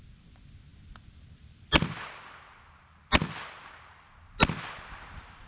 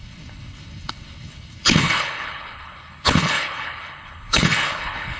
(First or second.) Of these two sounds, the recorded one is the first